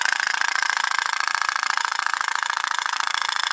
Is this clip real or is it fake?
fake